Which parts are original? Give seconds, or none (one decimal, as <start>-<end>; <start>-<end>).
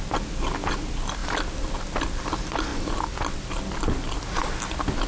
0.0-5.1